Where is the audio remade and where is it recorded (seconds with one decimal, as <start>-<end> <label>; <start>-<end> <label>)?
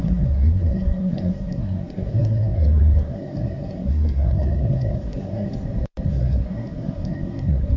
0.0-5.5 remade; 5.5-6.1 recorded; 6.1-7.8 remade